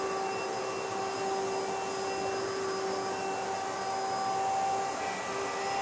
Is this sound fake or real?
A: real